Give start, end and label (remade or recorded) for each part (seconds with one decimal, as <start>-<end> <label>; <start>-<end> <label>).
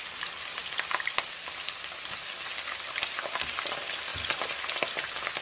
0.0-5.4 recorded